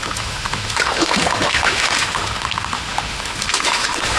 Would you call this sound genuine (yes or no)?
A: no